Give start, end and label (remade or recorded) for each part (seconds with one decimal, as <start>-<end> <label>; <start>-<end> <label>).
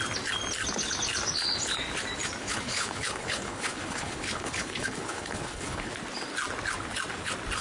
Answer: 0.0-2.4 recorded; 2.4-5.9 remade; 5.9-7.6 recorded